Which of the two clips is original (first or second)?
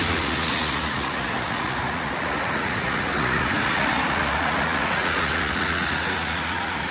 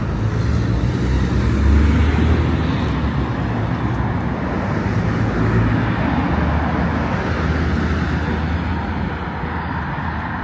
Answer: second